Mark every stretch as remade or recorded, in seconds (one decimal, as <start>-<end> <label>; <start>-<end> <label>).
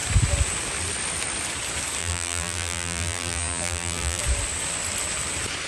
0.0-2.0 recorded; 2.0-4.2 remade; 4.2-5.7 recorded